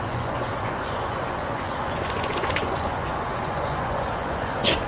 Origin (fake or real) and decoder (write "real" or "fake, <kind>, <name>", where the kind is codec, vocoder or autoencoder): fake, vocoder, Vocos